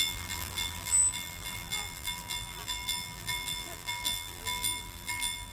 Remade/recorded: remade